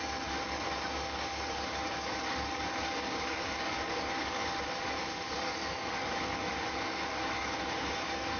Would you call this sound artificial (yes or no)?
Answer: yes